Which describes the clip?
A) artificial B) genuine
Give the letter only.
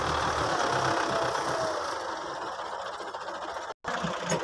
B